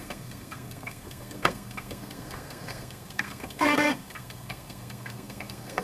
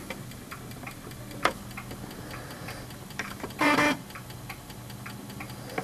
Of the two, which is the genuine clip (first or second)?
second